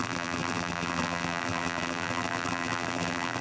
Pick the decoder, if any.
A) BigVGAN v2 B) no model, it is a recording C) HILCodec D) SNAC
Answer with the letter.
A